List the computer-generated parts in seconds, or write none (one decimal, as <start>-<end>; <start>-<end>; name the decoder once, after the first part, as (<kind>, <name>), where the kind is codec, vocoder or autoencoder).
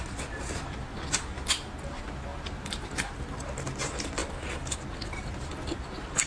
2.3-3.1 (vocoder, BigVGAN v2)